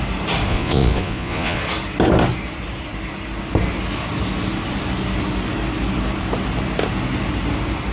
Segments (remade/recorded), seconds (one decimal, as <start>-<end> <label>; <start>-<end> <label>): 0.0-0.5 recorded; 0.5-1.6 remade; 1.6-7.9 recorded